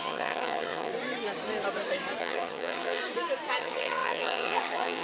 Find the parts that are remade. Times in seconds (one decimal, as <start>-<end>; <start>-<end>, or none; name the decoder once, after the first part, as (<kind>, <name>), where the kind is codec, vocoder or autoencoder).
0.0-0.9 (vocoder, HiFi-GAN); 2.2-3.0; 3.6-5.0